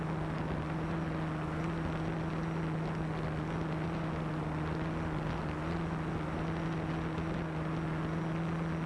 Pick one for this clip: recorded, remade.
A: recorded